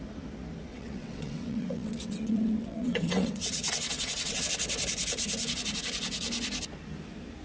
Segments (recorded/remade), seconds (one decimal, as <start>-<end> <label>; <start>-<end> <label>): 0.0-0.7 recorded; 0.7-4.4 remade; 4.4-7.4 recorded